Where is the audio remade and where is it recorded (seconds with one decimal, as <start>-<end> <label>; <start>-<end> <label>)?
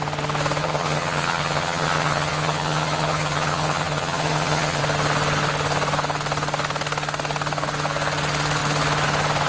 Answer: 0.0-0.6 recorded; 0.6-4.8 remade; 4.8-9.5 recorded